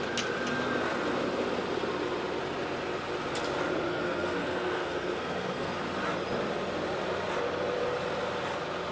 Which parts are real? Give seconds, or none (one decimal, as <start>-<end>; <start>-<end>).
0.0-3.9; 5.7-8.9